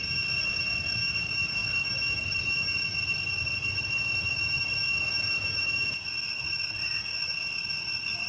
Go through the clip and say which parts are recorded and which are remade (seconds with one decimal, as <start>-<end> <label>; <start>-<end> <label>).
0.0-8.3 recorded